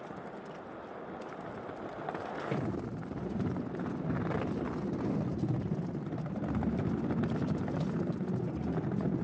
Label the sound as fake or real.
real